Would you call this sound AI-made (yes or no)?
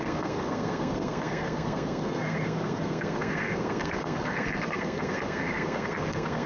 yes